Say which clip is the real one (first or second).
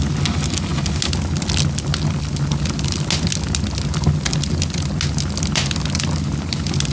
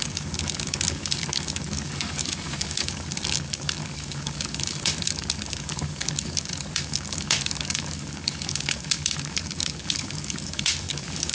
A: first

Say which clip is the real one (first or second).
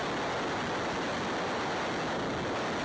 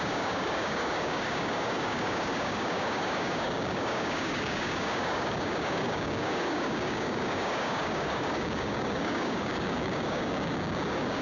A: first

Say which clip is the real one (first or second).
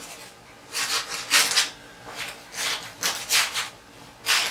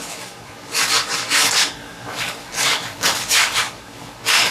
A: first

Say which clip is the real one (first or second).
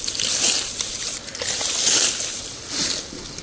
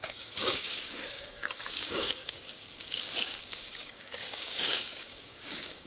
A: first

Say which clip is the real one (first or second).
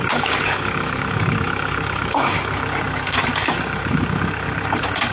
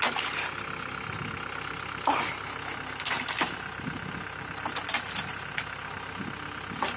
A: second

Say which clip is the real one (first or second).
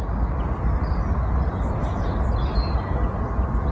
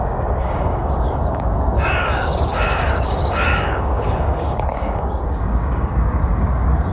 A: first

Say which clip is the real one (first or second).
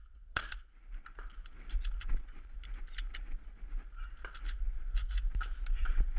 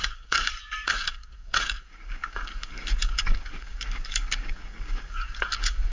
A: first